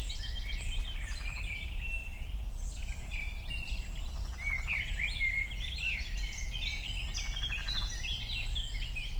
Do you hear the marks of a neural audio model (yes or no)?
no